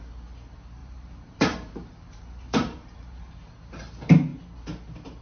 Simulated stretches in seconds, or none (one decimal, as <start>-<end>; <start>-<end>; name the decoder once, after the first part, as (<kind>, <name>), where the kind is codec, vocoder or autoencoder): 0.8-3.5 (vocoder, BigVGAN v2)